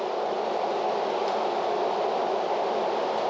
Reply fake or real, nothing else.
real